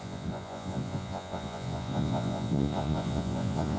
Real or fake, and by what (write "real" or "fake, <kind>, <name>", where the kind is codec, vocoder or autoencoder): fake, vocoder, Vocos